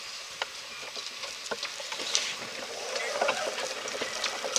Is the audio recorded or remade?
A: recorded